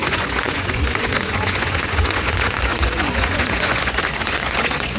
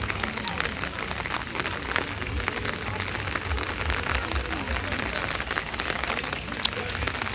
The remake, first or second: first